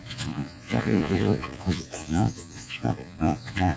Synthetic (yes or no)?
yes